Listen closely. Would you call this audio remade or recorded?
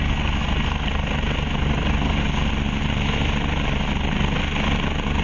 recorded